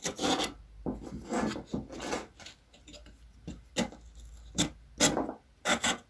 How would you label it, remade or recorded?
recorded